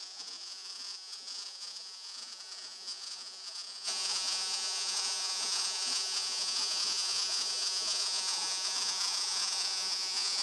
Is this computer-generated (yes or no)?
yes